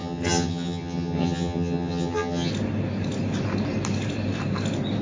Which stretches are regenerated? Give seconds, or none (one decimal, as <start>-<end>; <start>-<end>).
0.0-2.5